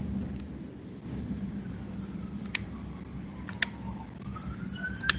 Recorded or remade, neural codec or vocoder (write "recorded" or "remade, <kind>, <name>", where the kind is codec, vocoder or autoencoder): recorded